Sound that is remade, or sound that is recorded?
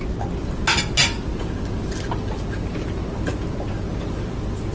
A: recorded